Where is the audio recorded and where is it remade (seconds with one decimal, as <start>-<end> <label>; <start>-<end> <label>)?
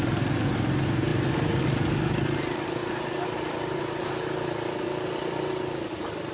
0.0-6.3 recorded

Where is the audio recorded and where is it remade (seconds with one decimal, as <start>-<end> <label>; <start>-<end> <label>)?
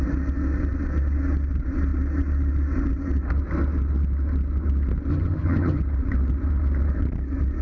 0.0-5.1 recorded; 5.1-5.8 remade; 5.8-7.6 recorded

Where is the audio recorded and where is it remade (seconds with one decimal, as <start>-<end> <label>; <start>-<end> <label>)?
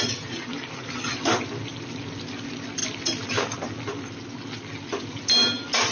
0.0-5.9 recorded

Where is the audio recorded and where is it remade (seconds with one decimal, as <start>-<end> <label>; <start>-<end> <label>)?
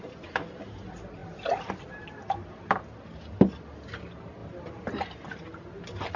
0.0-6.2 recorded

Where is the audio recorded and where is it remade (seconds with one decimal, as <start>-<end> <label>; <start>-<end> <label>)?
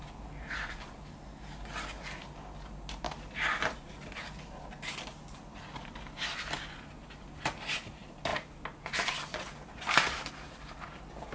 0.0-11.3 recorded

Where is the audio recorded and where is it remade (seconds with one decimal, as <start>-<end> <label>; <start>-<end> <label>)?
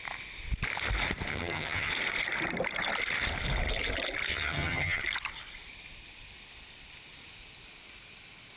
0.0-1.3 recorded; 1.3-1.9 remade; 1.9-4.3 recorded; 4.3-5.0 remade; 5.0-8.6 recorded